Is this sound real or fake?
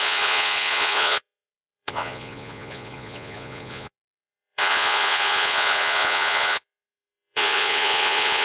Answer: fake